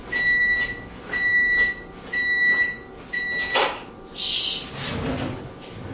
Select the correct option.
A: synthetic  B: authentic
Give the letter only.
B